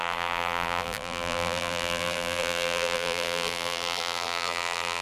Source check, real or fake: fake